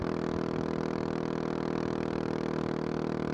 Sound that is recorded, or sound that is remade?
recorded